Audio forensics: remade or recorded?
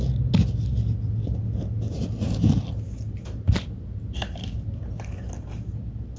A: recorded